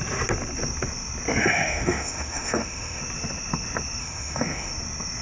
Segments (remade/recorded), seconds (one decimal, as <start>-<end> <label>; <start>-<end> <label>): 0.0-1.4 recorded; 1.4-3.0 remade; 3.0-4.0 recorded; 4.0-4.7 remade; 4.7-5.2 recorded